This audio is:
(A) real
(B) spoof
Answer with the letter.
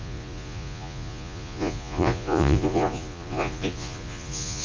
B